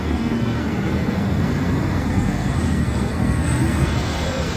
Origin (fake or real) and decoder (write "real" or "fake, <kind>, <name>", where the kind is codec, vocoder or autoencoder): fake, codec, SNAC